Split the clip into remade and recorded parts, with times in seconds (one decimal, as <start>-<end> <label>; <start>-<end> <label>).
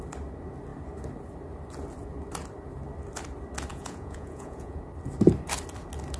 0.0-3.7 recorded; 3.7-4.8 remade; 4.8-6.2 recorded